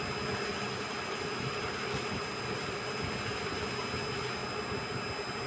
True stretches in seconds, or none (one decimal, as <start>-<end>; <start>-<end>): 0.0-0.5; 3.8-4.4; 5.1-5.5